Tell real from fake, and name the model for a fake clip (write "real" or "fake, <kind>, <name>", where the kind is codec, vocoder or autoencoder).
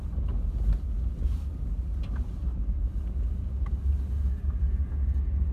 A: real